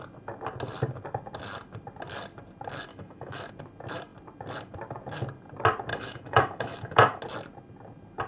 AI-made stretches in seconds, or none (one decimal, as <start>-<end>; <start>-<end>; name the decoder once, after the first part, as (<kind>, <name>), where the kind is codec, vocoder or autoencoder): 2.9-3.5 (autoencoder, DAC-VAE); 5.9-7.2

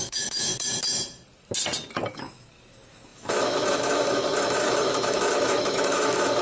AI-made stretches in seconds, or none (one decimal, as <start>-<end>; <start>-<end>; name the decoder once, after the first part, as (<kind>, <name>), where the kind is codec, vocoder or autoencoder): 0.0-0.5 (autoencoder, DAC-VAE); 2.1-6.4

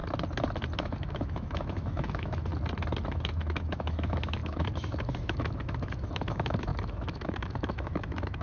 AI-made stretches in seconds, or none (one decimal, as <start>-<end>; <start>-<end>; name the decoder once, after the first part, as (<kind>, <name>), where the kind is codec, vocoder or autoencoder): 0.8-2.5 (autoencoder, DAC-VAE); 3.1-8.4

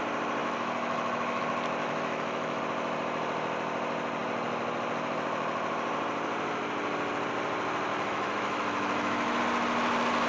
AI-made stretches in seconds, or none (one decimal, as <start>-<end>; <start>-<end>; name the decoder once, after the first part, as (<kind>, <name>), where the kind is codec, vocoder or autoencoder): 0.4-1.4 (autoencoder, DAC-VAE); 1.8-2.6; 7.9-9.4

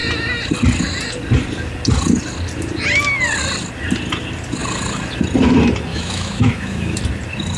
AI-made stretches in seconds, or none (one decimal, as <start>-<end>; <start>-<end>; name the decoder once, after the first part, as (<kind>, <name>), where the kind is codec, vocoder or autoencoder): 5.9-7.0 (autoencoder, DAC-VAE)

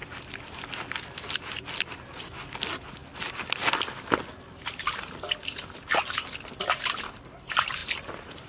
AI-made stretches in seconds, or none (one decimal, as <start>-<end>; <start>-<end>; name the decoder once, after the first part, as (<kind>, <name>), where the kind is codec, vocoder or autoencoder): none